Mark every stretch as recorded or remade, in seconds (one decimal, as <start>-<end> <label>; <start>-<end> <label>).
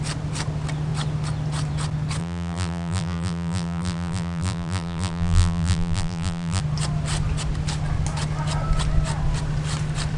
0.0-2.2 recorded; 2.2-6.6 remade; 6.6-10.2 recorded